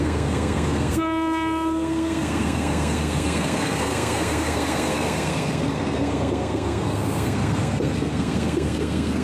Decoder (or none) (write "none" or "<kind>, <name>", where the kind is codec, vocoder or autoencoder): codec, SNAC